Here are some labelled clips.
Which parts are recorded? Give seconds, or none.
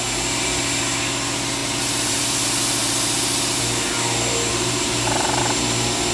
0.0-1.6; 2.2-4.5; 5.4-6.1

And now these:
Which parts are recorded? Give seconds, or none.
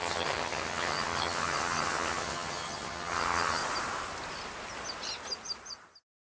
3.6-6.4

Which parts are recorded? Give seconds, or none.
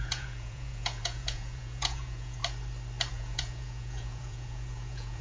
2.4-3.1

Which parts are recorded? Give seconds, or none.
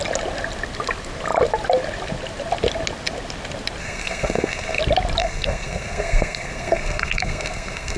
0.0-3.8; 4.8-5.2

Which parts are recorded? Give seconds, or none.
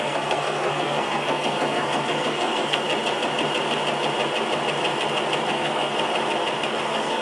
2.9-5.5; 5.9-6.8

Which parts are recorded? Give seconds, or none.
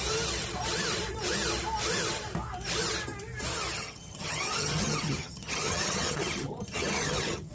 0.0-3.8